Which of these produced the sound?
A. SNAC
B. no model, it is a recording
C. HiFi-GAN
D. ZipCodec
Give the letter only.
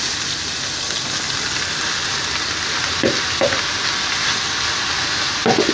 B